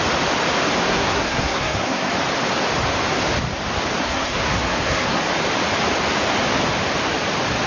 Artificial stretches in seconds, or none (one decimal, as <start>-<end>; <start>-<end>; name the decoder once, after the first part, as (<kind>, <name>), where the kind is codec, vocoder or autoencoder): 0.8-2.1 (codec, SNAC); 4.0-5.2